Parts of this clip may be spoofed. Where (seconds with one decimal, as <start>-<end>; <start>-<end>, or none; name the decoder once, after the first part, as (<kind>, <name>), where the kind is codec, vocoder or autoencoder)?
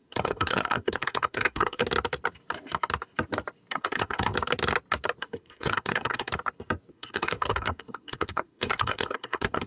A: 0.0-1.8 (codec, SNAC); 3.7-4.3; 5.2-6.3; 6.9-9.7